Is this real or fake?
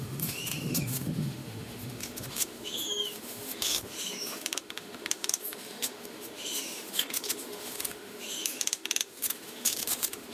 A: fake